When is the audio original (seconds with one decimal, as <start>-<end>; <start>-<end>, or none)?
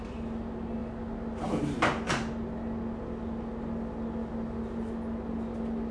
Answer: 0.0-5.9